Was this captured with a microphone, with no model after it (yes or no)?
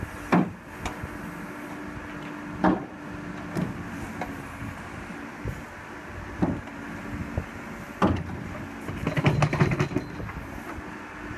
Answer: yes